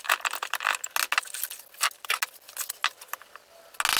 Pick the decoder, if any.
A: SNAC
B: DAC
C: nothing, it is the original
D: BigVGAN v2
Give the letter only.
C